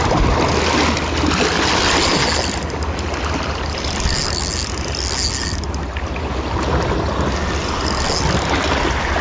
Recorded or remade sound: recorded